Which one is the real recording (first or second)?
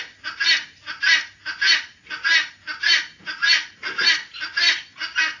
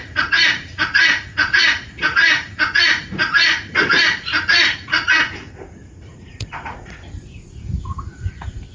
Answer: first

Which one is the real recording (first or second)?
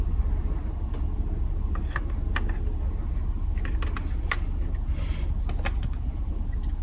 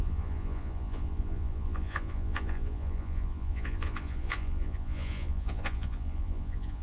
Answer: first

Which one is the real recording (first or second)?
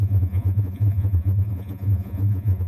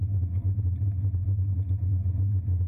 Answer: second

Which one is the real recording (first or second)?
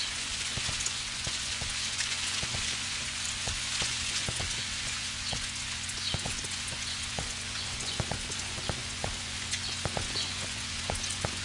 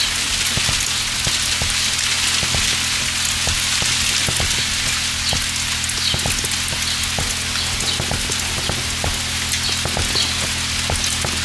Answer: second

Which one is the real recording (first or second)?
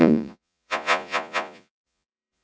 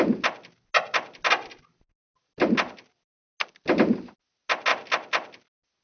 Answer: second